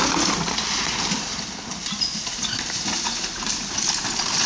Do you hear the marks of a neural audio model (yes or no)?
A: no